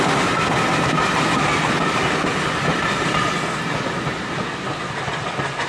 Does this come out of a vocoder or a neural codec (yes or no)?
no